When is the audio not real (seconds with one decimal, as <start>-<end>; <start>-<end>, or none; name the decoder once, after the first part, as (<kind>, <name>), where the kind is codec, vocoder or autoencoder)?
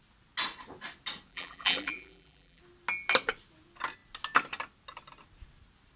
1.3-2.6 (vocoder, BigVGAN v2)